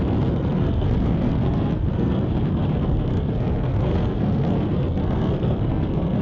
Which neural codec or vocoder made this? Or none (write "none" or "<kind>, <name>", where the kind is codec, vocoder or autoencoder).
codec, SNAC